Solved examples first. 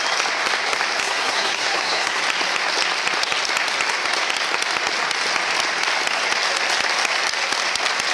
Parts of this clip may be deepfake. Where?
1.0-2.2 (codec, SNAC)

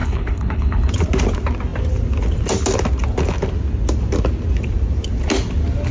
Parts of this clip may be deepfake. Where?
0.0-0.9 (codec, HILCodec)

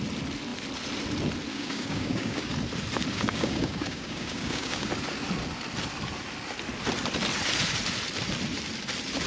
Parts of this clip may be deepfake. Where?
1.5-2.5 (codec, DAC); 3.1-4.9

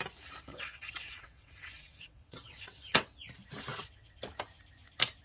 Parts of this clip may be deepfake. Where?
0.5-3.2 (vocoder, WaveNeXt); 3.7-4.2

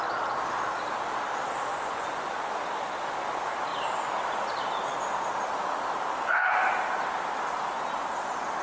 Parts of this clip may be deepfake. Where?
1.7-2.5 (vocoder, Vocos)

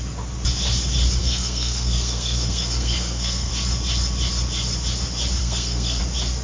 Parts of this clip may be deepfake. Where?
1.2-3.5 (codec, SNAC); 5.4-6.0

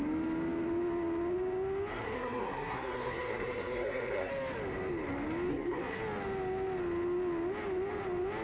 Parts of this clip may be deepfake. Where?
1.9-4.3 (codec, SNAC); 5.5-6.0